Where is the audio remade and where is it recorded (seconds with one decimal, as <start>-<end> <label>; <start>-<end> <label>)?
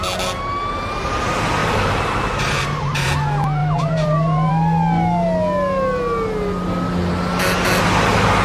0.0-1.6 recorded; 1.6-3.1 remade; 3.1-3.6 recorded; 3.6-4.5 remade; 4.5-8.4 recorded